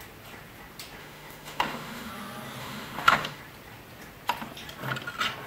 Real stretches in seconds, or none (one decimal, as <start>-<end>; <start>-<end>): 0.0-1.0; 2.1-2.6; 3.4-5.5